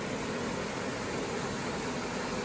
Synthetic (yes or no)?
no